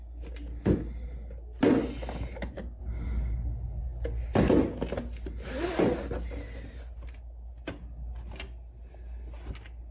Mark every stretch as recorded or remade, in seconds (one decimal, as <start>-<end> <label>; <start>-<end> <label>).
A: 0.0-9.9 recorded